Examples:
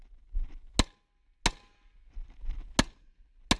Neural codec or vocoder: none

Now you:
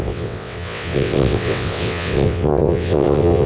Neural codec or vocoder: vocoder, WaveNeXt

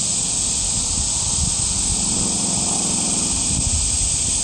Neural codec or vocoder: none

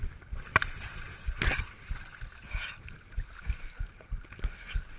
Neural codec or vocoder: none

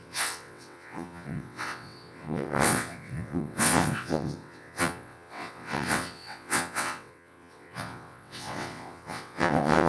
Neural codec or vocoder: vocoder, WaveNeXt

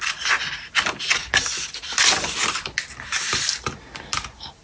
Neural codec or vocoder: none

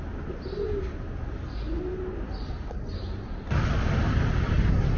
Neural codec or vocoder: none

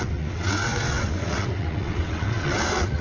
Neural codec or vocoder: vocoder, WaveNeXt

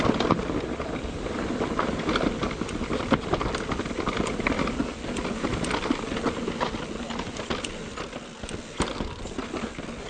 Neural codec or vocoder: none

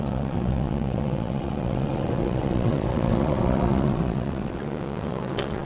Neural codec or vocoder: vocoder, WaveNeXt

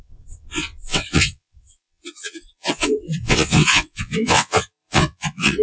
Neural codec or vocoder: vocoder, WaveNeXt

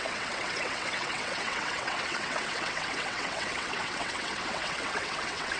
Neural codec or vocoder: vocoder, WaveNeXt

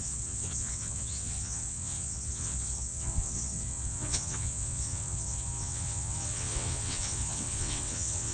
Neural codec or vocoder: vocoder, WaveNeXt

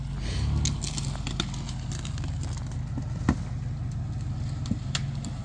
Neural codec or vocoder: none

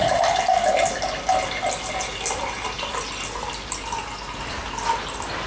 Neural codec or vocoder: none